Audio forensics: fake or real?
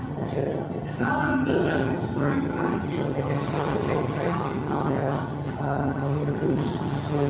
fake